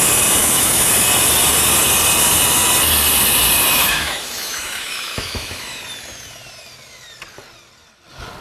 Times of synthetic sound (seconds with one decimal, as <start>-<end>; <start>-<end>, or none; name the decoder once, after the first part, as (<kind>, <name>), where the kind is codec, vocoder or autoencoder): 0.4-0.9 (autoencoder, DAC-VAE); 3.8-5.8